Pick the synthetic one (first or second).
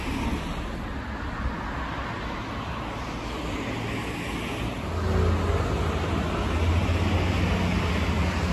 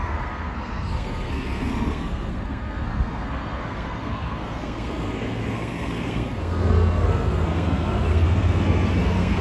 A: second